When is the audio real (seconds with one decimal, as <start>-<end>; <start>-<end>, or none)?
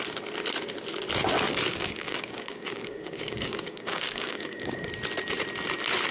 0.0-1.7; 4.9-6.1